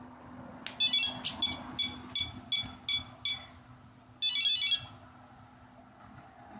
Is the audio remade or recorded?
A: recorded